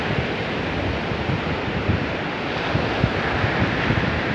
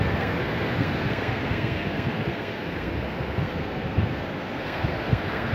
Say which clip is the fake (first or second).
second